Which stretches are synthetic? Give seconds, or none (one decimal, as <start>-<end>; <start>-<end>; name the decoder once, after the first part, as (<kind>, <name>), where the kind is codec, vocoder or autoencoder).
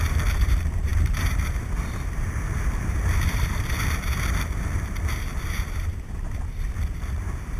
0.0-7.6 (vocoder, BigVGAN v2)